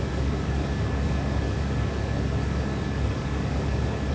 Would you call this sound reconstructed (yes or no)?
yes